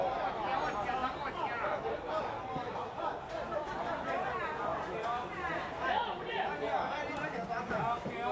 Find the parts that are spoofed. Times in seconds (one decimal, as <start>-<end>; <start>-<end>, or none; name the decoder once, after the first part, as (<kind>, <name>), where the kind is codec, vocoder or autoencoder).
1.0-2.2 (vocoder, BigVGAN v2); 4.7-6.7